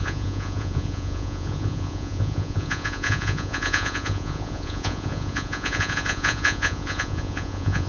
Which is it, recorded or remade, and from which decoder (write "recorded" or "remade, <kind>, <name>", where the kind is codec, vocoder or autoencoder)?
remade, vocoder, Vocos